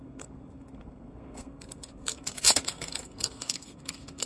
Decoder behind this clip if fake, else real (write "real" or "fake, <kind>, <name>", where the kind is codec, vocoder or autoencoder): fake, codec, SNAC